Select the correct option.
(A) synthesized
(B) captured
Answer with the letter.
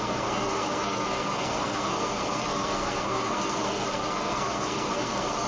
A